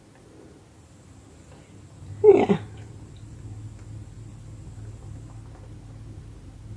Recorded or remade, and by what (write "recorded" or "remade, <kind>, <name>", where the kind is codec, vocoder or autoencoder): recorded